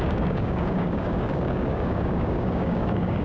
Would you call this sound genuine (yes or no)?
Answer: no